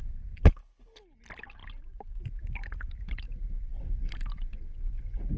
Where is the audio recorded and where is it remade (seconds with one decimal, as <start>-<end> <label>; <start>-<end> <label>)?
0.0-0.4 recorded; 0.4-1.0 remade; 1.0-5.4 recorded